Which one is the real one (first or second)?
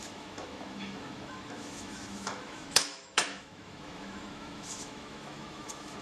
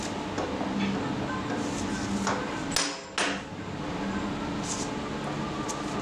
second